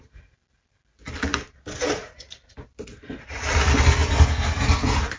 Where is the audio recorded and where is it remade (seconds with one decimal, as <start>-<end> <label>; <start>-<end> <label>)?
0.0-5.2 recorded

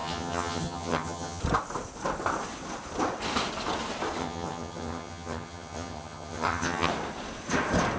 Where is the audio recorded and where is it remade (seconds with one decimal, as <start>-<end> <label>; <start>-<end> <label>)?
0.0-1.4 remade; 1.4-4.2 recorded; 4.2-6.9 remade; 6.9-8.0 recorded

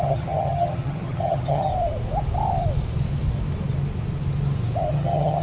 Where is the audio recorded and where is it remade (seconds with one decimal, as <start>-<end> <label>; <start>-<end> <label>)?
0.0-1.7 remade; 1.7-4.9 recorded; 4.9-5.4 remade

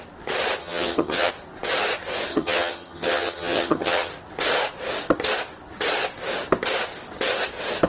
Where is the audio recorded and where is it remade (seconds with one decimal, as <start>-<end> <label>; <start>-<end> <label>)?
0.0-0.6 recorded; 0.6-1.3 remade; 1.3-2.3 recorded; 2.3-4.1 remade; 4.1-7.9 recorded

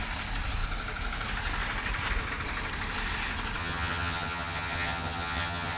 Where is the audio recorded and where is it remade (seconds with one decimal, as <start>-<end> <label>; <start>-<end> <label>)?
0.0-3.6 recorded; 3.6-5.8 remade

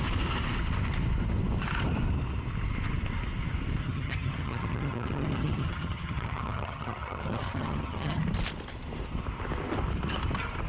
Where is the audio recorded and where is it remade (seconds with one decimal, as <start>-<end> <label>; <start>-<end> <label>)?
0.0-3.8 recorded; 3.8-8.2 remade; 8.2-10.7 recorded

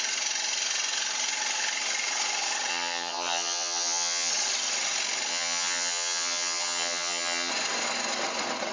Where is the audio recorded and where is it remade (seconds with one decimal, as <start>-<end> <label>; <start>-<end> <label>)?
0.0-2.7 recorded; 2.7-4.3 remade; 4.3-5.3 recorded; 5.3-7.5 remade; 7.5-8.7 recorded

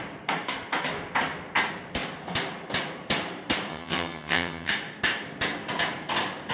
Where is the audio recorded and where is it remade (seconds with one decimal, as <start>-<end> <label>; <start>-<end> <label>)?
0.0-3.7 recorded; 3.7-4.7 remade; 4.7-6.5 recorded